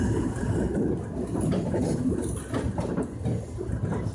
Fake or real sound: real